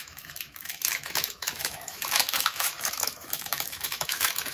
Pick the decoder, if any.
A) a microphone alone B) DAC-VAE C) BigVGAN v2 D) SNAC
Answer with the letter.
B